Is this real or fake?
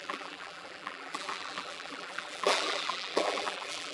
fake